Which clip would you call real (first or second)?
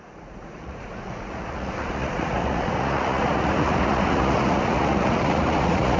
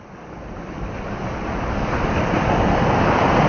second